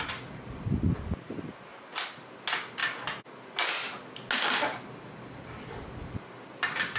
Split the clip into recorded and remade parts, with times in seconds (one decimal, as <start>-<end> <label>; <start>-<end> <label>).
0.0-7.0 recorded